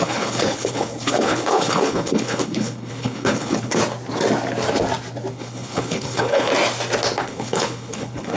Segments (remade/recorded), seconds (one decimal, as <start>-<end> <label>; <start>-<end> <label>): 0.0-3.8 remade; 3.8-5.3 recorded; 5.3-6.5 remade; 6.5-7.2 recorded; 7.2-8.4 remade